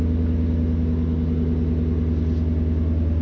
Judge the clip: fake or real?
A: real